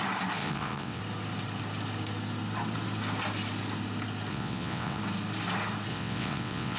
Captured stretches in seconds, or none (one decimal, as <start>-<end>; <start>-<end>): 0.0-0.4; 1.0-4.3; 5.0-5.9